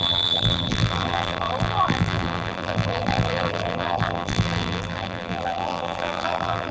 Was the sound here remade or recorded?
remade